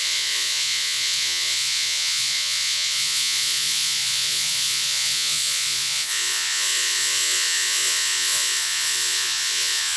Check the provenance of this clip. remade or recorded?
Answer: remade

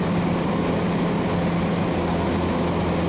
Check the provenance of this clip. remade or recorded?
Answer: recorded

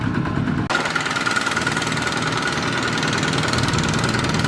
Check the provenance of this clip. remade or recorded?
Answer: recorded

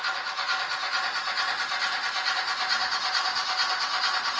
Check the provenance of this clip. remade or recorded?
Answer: recorded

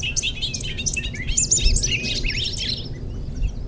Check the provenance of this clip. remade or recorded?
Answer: recorded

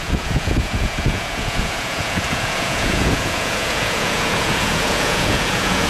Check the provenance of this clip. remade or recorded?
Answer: remade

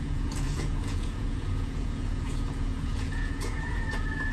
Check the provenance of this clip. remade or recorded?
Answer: remade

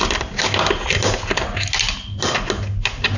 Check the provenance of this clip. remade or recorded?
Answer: recorded